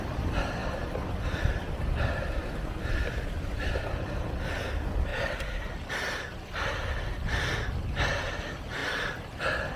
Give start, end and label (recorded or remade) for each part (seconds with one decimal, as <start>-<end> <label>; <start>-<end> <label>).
0.0-9.8 recorded